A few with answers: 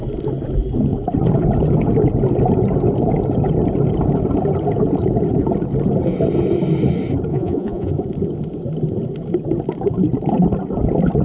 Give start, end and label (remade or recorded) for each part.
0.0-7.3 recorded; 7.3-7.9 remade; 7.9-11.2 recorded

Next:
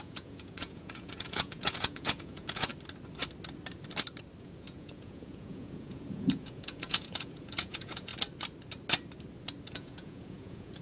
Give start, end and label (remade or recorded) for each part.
0.0-2.7 remade; 2.7-4.4 recorded; 4.4-8.1 remade; 8.1-9.7 recorded; 9.7-10.8 remade

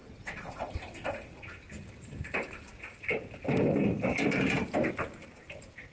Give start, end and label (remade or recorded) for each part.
0.0-0.7 remade; 0.7-5.9 recorded

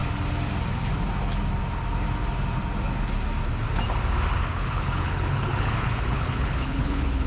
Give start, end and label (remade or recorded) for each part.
0.0-4.4 recorded; 4.4-7.3 remade

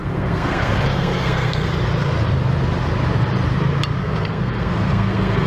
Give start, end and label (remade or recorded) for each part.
0.0-1.7 remade; 1.7-4.0 recorded; 4.0-5.5 remade

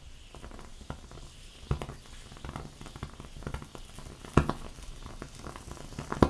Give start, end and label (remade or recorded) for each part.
0.0-6.3 recorded